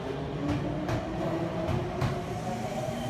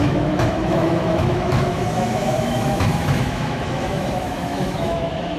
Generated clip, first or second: second